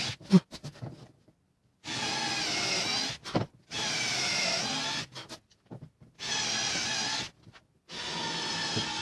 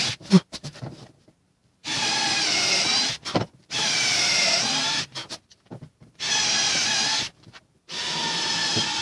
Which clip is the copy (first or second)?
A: second